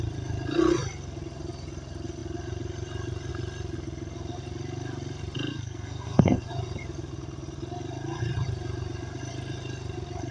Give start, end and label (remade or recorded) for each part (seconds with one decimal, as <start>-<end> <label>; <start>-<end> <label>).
0.0-5.5 recorded; 5.5-6.5 remade; 6.5-10.3 recorded

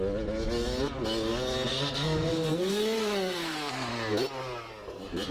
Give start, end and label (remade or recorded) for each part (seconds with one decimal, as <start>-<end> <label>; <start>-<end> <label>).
0.0-1.7 recorded; 1.7-3.9 remade; 3.9-5.3 recorded

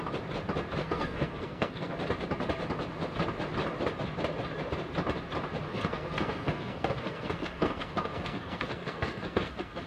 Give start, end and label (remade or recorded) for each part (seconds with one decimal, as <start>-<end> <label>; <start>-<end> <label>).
0.0-0.8 recorded; 0.8-1.9 remade; 1.9-5.7 recorded; 5.7-9.9 remade

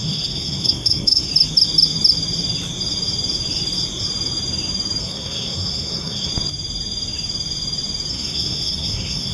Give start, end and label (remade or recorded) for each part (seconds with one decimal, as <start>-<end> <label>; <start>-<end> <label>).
0.0-1.3 remade; 1.3-5.0 recorded; 5.0-6.3 remade; 6.3-8.1 recorded; 8.1-9.3 remade

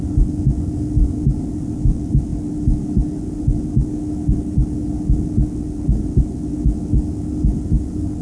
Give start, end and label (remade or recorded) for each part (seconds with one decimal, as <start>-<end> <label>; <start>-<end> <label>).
0.0-8.2 recorded

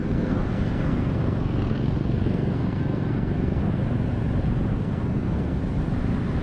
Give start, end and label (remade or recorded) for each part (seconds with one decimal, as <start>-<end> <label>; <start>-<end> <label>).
0.0-3.8 remade; 3.8-4.7 recorded; 4.7-5.6 remade; 5.6-6.4 recorded

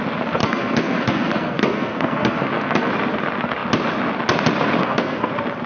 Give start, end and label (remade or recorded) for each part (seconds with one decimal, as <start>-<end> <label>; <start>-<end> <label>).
0.0-0.4 recorded; 0.4-2.9 remade; 2.9-4.8 recorded; 4.8-5.3 remade; 5.3-5.7 recorded

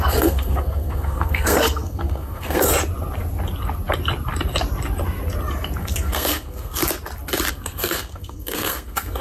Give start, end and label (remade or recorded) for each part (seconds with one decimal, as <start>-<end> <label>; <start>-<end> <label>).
0.0-2.7 remade; 2.7-5.8 recorded; 5.8-6.8 remade; 6.8-7.5 recorded; 7.5-9.2 remade